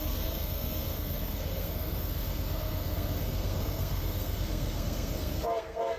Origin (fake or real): fake